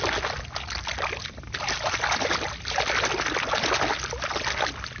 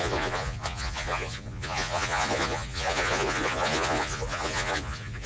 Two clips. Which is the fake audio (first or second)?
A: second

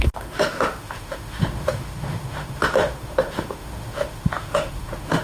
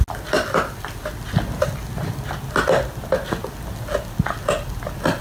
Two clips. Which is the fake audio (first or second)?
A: first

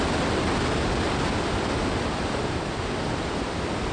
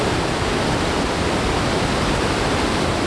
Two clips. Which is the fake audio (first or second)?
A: second